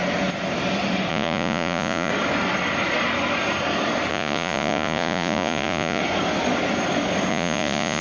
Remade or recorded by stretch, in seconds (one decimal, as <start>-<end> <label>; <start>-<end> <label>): 0.0-1.1 recorded; 1.1-2.1 remade; 2.1-4.1 recorded; 4.1-6.0 remade; 6.0-7.3 recorded; 7.3-8.0 remade